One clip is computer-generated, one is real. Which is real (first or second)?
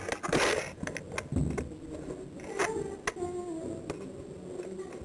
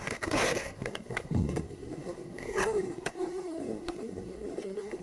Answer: first